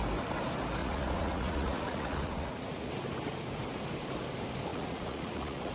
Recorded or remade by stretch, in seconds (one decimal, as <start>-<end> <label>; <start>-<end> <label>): 0.0-0.8 recorded; 0.8-2.9 remade; 2.9-4.7 recorded; 4.7-5.7 remade